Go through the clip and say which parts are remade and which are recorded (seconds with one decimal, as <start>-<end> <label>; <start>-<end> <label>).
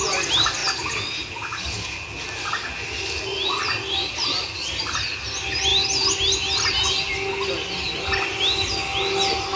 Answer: 0.0-9.6 recorded